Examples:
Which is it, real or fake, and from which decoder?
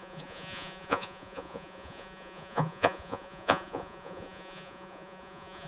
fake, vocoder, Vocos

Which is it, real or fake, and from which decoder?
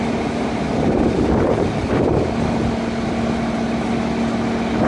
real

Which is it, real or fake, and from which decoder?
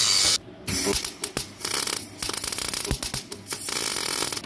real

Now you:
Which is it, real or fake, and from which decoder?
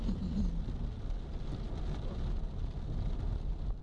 real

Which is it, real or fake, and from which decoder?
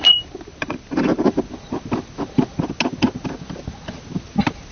real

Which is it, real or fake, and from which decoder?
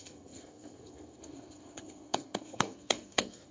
fake, codec, SNAC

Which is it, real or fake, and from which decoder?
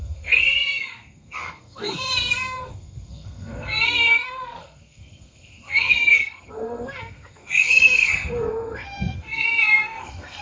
fake, codec, SNAC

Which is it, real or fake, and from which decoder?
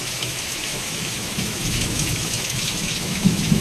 fake, autoencoder, DAC-VAE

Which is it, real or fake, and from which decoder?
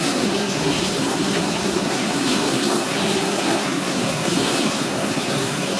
fake, codec, SNAC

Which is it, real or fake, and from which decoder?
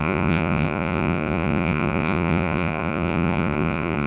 fake, vocoder, Vocos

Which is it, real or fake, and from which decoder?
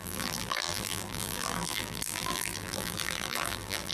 fake, vocoder, BigVGAN v2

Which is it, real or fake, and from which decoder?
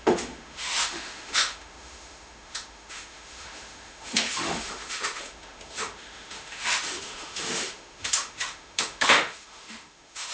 fake, autoencoder, DAC-VAE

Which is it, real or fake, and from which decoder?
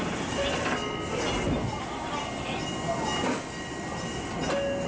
real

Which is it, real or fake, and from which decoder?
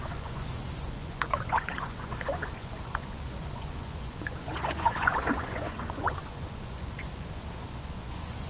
fake, vocoder, Vocos